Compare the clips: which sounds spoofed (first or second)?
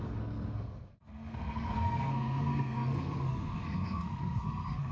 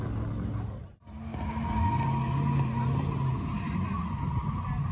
first